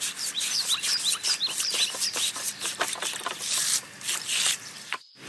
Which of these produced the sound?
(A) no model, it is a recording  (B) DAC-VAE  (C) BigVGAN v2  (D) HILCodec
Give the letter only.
C